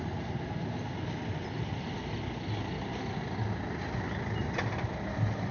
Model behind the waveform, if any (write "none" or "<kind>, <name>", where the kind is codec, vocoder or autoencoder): none